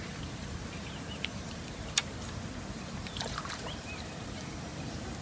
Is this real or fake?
fake